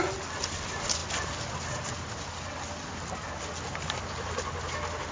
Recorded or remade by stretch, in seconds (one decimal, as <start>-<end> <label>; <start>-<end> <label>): 0.0-5.1 recorded